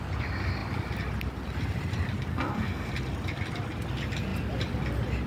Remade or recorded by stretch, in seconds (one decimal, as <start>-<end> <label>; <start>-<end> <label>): 0.0-2.3 recorded; 2.3-2.9 remade; 2.9-5.3 recorded